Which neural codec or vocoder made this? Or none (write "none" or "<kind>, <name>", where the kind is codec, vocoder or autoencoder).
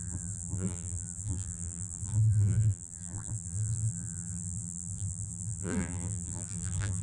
vocoder, BigVGAN v2